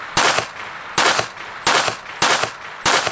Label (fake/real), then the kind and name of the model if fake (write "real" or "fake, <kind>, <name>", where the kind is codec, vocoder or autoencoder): real